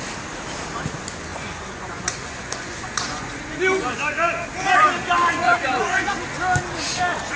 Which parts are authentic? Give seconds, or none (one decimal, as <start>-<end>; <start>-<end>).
0.0-1.3; 3.6-5.4; 6.1-7.4